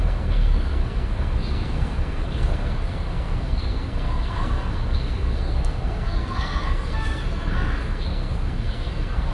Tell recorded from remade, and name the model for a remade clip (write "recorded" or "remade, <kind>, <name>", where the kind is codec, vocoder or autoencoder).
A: remade, codec, SNAC